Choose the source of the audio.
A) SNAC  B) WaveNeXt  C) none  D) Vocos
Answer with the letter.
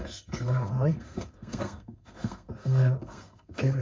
A